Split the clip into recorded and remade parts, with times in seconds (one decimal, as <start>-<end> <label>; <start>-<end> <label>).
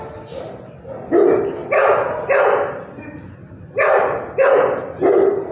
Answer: 0.0-5.5 recorded